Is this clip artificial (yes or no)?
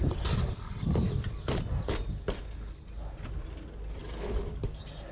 no